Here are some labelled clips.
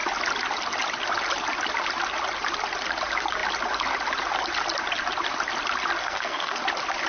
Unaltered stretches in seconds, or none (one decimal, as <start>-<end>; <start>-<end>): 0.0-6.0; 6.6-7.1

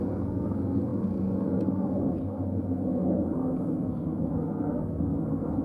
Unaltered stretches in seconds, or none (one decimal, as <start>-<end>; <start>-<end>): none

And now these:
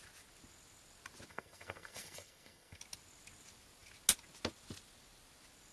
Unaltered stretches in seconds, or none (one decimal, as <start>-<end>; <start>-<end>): 0.0-1.3; 2.8-5.7